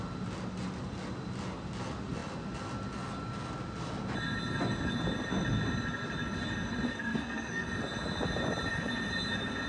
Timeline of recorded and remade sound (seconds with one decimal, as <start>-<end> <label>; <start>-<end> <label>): 0.0-6.9 recorded; 6.9-7.7 remade; 7.7-9.7 recorded